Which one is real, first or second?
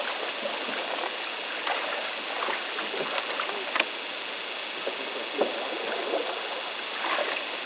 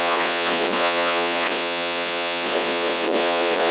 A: first